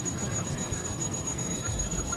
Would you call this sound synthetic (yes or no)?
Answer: yes